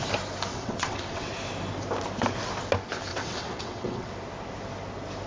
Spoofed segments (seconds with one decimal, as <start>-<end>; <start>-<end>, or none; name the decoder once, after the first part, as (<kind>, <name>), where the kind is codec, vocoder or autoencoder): 0.5-1.3 (vocoder, WaveNeXt); 3.1-4.1